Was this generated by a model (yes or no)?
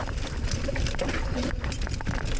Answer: no